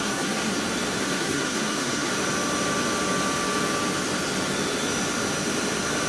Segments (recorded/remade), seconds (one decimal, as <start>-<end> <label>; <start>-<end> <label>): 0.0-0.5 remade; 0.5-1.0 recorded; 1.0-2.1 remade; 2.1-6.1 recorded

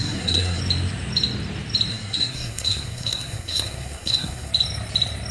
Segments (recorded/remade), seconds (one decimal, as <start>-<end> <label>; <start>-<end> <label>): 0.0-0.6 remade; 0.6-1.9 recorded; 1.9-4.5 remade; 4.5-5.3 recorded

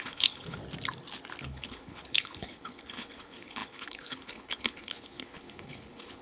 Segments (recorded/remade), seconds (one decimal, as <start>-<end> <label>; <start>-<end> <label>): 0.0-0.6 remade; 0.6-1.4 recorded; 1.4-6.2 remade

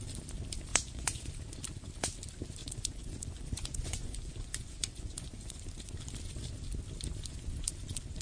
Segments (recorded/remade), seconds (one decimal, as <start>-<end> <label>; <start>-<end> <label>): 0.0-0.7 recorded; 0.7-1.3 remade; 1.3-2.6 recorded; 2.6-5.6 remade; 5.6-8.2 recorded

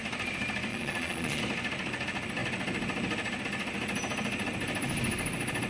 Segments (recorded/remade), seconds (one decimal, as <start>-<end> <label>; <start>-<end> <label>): 0.0-0.7 recorded; 0.7-1.4 remade; 1.4-5.7 recorded